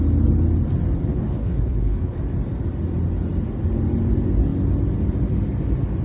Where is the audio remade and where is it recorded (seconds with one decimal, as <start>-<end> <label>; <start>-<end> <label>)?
0.0-1.1 recorded; 1.1-2.2 remade; 2.2-6.0 recorded